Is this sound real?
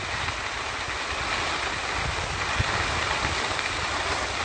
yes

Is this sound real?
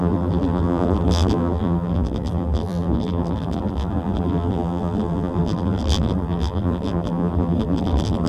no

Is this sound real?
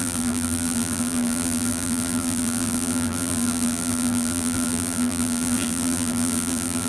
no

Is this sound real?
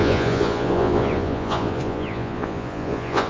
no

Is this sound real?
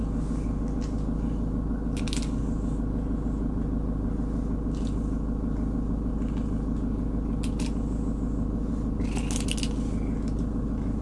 yes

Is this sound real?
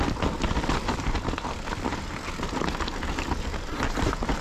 yes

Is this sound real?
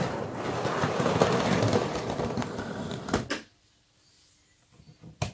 yes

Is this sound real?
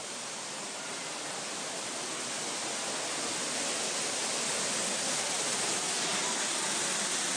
yes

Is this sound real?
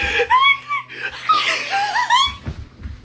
yes